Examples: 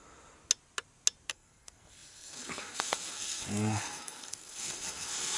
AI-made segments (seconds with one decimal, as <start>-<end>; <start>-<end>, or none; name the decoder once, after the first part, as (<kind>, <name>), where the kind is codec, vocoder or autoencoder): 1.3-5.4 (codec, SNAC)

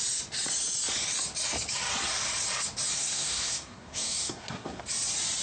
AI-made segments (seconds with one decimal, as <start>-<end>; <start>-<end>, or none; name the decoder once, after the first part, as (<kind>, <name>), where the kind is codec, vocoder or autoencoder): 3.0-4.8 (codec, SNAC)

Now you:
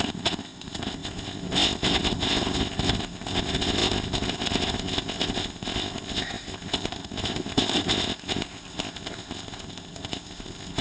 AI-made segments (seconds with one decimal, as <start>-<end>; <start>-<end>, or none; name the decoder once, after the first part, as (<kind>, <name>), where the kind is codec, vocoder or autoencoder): 0.0-10.8 (codec, ZipCodec)

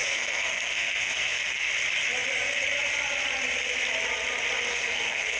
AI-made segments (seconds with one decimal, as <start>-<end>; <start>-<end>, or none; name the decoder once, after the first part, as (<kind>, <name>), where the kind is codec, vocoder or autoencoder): 0.0-1.7 (codec, SNAC); 4.7-5.4

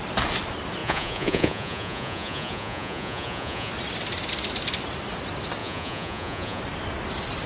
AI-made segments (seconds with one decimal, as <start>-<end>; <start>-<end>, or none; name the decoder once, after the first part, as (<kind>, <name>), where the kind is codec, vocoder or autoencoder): 0.8-3.7 (vocoder, Vocos); 5.6-6.6